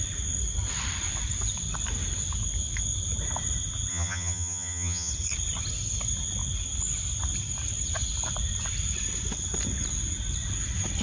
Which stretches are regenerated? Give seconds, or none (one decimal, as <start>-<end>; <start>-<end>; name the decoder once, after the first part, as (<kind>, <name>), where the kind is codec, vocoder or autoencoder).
3.9-5.1 (vocoder, HiFi-GAN)